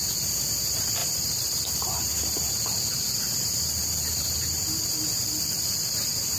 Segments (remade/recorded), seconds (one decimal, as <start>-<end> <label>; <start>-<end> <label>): 0.0-1.0 recorded; 1.0-4.8 remade; 4.8-6.4 recorded